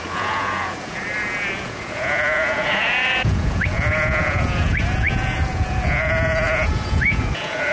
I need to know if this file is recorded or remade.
remade